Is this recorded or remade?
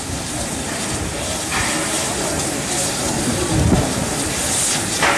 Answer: recorded